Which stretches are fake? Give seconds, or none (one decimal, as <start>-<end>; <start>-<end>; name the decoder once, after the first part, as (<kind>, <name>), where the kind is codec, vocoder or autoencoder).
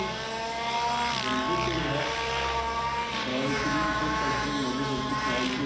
3.3-5.1 (autoencoder, DAC-VAE)